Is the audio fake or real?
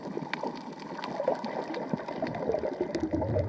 real